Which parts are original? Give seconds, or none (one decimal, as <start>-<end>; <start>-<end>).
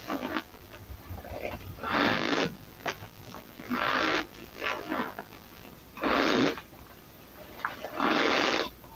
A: 0.8-2.1; 5.7-9.0